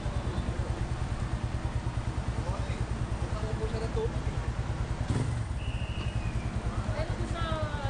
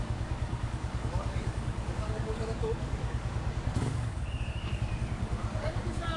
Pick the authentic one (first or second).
first